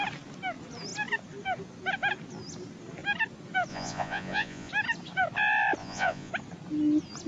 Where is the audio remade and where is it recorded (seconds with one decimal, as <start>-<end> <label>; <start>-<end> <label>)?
0.0-3.7 recorded; 3.7-4.7 remade; 4.7-5.8 recorded; 5.8-6.3 remade; 6.3-7.3 recorded